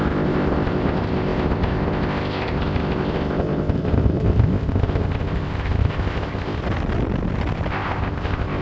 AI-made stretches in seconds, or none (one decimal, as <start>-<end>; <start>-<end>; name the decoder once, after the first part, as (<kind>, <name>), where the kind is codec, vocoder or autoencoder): 0.0-6.6 (codec, ZipCodec); 7.7-8.6